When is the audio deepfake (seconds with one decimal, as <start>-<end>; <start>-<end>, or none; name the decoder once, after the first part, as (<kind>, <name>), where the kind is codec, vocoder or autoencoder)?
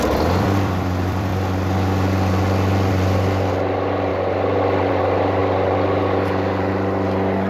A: 0.0-1.3 (vocoder, BigVGAN v2); 2.9-4.1; 4.9-7.5